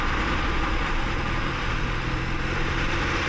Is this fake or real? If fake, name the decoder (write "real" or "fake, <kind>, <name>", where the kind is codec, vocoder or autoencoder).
fake, vocoder, BigVGAN v2